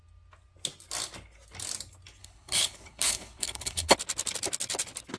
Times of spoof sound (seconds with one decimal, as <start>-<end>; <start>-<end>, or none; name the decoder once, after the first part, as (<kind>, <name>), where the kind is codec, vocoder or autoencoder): 2.2-3.9 (codec, HILCodec)